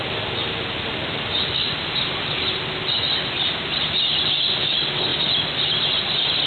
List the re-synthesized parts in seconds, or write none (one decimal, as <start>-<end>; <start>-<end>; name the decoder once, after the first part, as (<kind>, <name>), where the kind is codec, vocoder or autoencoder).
0.9-2.6 (vocoder, BigVGAN v2)